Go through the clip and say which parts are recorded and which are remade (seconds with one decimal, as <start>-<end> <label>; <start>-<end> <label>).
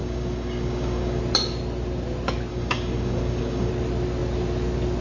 0.0-1.2 remade; 1.2-2.5 recorded; 2.5-3.7 remade; 3.7-5.0 recorded